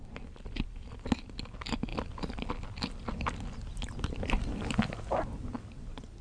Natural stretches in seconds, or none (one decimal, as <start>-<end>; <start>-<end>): 0.0-6.2